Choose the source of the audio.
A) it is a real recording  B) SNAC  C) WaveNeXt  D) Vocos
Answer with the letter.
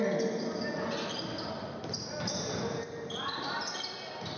A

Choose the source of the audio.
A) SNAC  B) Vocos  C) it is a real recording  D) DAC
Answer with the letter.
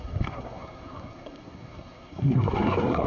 A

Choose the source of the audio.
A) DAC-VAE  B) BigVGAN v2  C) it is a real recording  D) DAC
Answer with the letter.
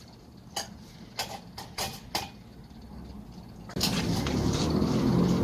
C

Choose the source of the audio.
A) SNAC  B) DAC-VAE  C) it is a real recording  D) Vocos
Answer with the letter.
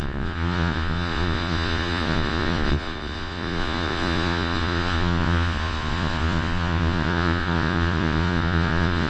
D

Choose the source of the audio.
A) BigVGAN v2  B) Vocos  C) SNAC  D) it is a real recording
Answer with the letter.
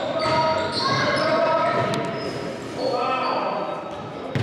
D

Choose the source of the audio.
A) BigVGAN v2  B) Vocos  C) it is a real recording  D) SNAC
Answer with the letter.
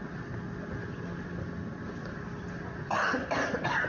C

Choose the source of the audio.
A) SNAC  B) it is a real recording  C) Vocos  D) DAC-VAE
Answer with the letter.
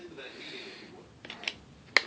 B